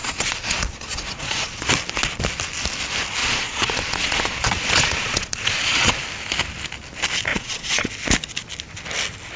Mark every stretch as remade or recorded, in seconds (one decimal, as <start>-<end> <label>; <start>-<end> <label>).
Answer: 0.0-1.7 remade; 1.7-3.2 recorded; 3.2-6.0 remade; 6.0-7.3 recorded; 7.3-7.9 remade; 7.9-9.4 recorded